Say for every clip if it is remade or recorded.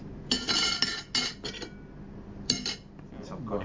recorded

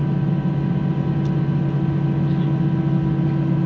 recorded